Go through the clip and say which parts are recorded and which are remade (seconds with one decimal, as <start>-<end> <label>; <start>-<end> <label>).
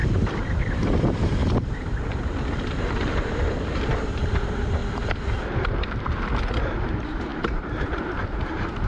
0.0-0.6 recorded; 0.6-4.8 remade; 4.8-6.8 recorded; 6.8-8.9 remade